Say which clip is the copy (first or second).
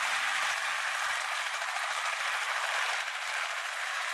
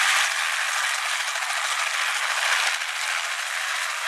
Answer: first